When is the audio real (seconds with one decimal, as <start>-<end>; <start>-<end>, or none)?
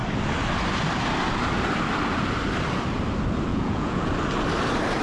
0.0-3.5; 4.1-5.0